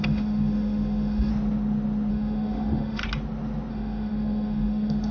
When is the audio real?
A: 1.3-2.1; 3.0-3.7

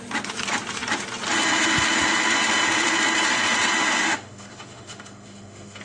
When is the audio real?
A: 0.0-4.0

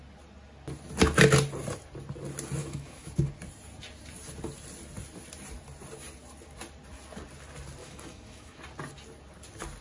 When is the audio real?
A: 0.0-2.6; 3.1-7.8; 8.6-9.8

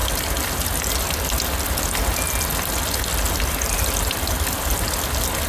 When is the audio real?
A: 0.0-5.5

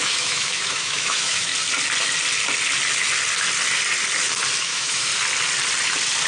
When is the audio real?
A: 1.5-4.6; 5.1-6.3

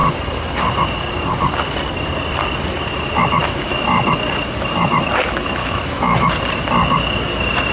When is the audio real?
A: 0.0-5.6; 6.3-7.7

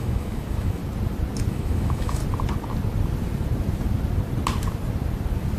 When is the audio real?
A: 0.8-1.5; 2.2-5.6

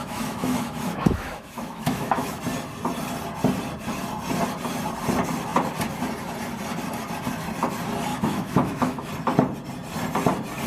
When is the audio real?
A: 2.4-8.1; 9.1-10.7